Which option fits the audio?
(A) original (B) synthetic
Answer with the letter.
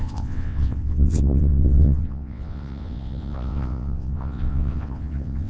B